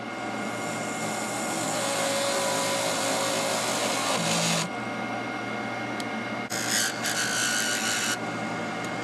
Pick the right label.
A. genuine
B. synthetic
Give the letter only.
A